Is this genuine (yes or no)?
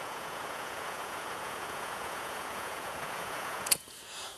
no